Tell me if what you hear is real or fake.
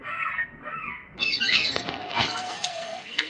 fake